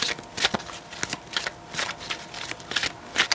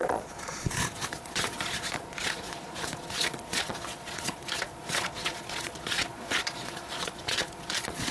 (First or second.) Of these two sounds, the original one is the first